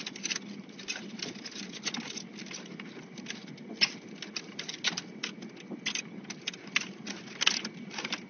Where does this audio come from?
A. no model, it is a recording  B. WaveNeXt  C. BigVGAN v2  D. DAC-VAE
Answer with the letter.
A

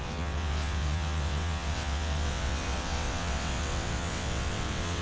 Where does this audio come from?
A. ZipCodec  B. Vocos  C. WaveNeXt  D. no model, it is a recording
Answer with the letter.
C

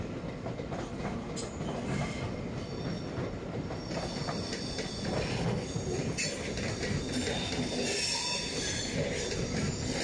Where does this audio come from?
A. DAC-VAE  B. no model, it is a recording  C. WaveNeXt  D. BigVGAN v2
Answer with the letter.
B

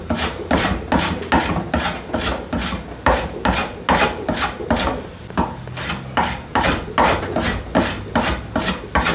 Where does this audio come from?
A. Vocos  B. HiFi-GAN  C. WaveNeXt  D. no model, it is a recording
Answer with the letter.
D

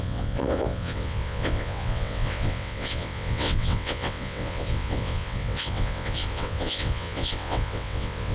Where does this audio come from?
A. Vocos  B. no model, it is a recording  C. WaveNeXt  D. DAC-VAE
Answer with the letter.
C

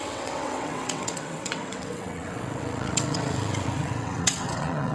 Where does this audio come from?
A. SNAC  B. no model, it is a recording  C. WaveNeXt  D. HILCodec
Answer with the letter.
C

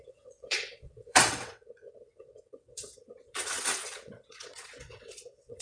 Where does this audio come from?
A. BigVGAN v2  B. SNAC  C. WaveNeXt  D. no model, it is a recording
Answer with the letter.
C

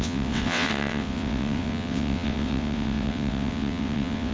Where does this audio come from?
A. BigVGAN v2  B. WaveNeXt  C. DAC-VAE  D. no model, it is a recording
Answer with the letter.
B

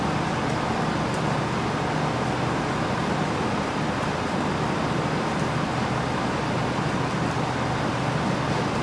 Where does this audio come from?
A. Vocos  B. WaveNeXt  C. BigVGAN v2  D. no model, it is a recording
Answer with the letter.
D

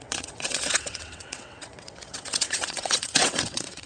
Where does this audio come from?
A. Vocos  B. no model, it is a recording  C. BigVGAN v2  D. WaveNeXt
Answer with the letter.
D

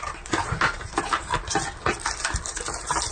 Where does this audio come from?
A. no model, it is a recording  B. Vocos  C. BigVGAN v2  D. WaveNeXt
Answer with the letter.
A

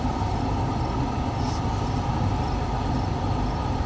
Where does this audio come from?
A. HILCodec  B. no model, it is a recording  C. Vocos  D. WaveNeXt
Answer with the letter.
B